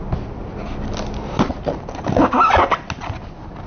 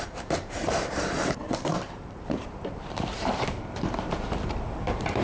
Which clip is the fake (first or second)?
second